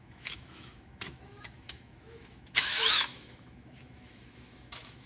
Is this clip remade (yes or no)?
yes